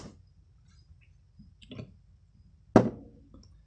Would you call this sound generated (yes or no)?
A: no